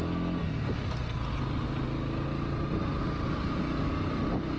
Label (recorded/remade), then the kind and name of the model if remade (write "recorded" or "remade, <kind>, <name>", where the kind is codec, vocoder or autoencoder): recorded